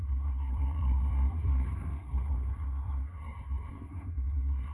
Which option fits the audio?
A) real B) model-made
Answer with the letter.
B